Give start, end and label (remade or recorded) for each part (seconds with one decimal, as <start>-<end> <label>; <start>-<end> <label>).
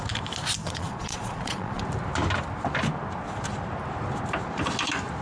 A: 0.0-0.6 recorded; 0.6-1.8 remade; 1.8-5.2 recorded